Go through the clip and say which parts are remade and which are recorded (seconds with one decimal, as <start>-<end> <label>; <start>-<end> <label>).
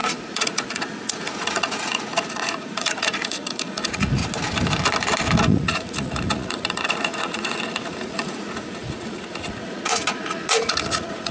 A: 0.0-4.2 remade; 4.2-5.4 recorded; 5.4-11.3 remade